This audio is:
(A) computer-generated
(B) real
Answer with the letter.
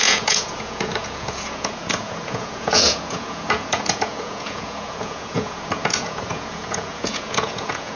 A